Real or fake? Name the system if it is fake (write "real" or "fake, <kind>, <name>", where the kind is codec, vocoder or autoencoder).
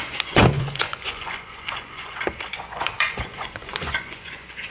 fake, vocoder, Vocos